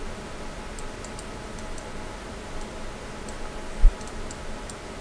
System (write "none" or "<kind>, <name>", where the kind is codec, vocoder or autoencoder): none